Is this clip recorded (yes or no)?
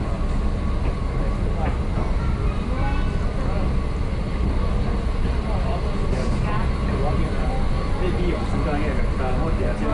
yes